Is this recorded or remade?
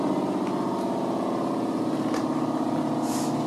recorded